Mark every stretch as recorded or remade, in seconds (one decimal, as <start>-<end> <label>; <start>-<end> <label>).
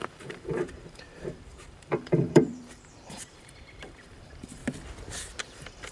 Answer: 0.0-4.6 remade; 4.6-5.4 recorded; 5.4-5.9 remade